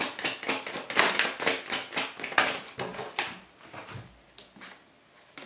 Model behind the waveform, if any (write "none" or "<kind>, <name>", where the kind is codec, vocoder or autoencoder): none